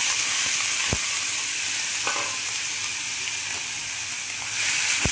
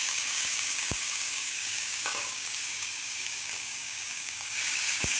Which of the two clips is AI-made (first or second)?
second